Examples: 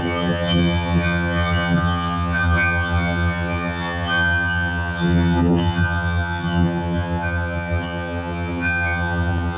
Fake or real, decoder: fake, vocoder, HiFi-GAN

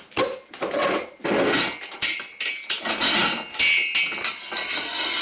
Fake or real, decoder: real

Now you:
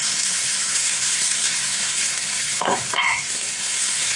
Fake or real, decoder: fake, codec, SNAC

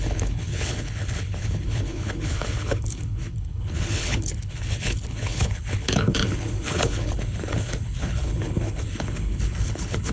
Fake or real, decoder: fake, codec, HILCodec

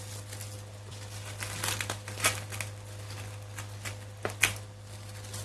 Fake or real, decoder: real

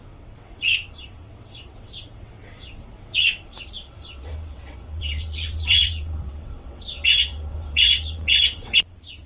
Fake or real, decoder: fake, vocoder, WaveNeXt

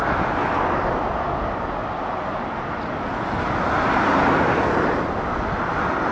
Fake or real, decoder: real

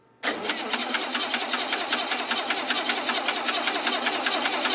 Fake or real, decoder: real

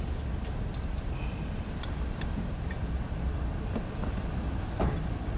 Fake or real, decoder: real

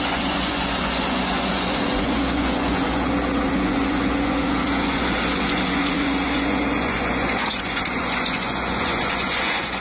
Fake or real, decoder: fake, vocoder, Vocos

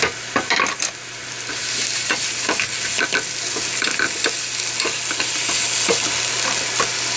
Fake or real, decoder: real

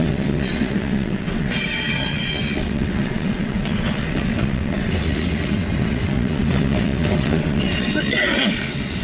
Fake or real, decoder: fake, vocoder, WaveNeXt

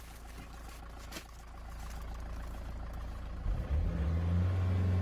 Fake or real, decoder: real